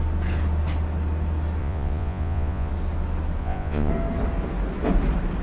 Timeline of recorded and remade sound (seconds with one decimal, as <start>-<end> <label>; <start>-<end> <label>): 0.0-1.6 recorded; 1.6-2.7 remade; 2.7-3.4 recorded; 3.4-3.9 remade; 3.9-5.4 recorded